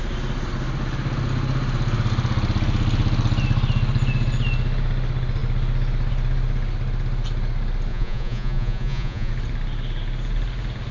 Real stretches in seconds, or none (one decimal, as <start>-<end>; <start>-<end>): 0.0-7.9; 9.3-10.9